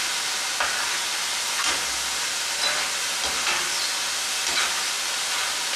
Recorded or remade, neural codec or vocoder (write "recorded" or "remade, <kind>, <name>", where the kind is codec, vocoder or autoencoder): recorded